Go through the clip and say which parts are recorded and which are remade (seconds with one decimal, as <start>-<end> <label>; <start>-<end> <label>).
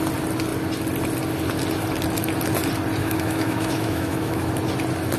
0.0-3.0 recorded; 3.0-4.5 remade; 4.5-5.2 recorded